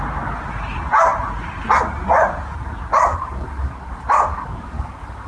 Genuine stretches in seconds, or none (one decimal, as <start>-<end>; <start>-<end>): 0.0-3.1; 3.9-4.3